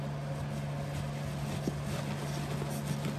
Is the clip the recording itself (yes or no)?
yes